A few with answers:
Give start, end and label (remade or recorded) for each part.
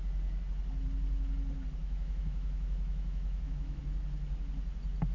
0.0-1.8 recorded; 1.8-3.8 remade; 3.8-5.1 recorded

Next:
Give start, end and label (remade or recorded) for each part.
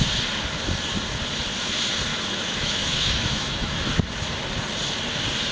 0.0-2.1 recorded; 2.1-3.9 remade; 3.9-5.5 recorded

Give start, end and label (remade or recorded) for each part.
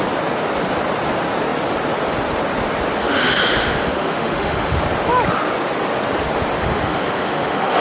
0.0-3.0 recorded; 3.0-4.8 remade; 4.8-6.6 recorded; 6.6-7.8 remade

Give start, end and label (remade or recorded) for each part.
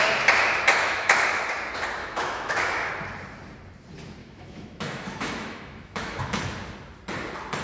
0.0-0.7 recorded; 0.7-1.4 remade; 1.4-2.0 recorded; 2.0-2.9 remade; 2.9-4.2 recorded; 4.2-6.4 remade; 6.4-7.6 recorded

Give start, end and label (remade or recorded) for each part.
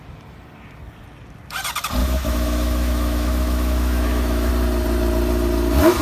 0.0-2.0 recorded; 2.0-4.5 remade; 4.5-6.0 recorded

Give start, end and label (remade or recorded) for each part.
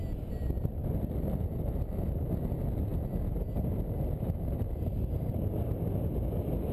0.0-6.7 recorded